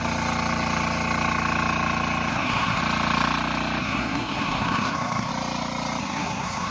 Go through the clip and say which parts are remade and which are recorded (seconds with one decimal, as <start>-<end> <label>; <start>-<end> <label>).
0.0-2.3 recorded; 2.3-2.8 remade; 2.8-3.8 recorded; 3.8-5.3 remade; 5.3-6.0 recorded; 6.0-6.7 remade